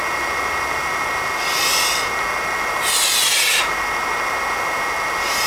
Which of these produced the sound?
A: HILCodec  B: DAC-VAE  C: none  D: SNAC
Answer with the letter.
C